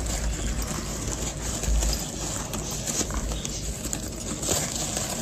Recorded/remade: recorded